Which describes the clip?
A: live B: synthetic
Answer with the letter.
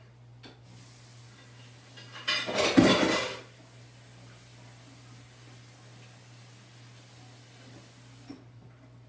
A